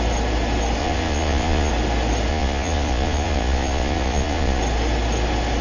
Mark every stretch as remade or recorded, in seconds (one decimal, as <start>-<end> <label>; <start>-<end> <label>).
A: 0.0-0.8 recorded; 0.8-1.7 remade; 1.7-2.3 recorded; 2.3-4.6 remade; 4.6-5.6 recorded